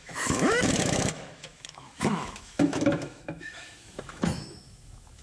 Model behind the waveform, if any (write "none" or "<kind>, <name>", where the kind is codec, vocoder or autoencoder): autoencoder, DAC-VAE